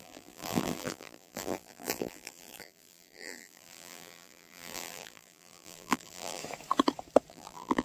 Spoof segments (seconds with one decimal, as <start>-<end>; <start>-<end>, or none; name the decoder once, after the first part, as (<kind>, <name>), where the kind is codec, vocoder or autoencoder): 0.0-6.4 (vocoder, BigVGAN v2); 7.3-7.8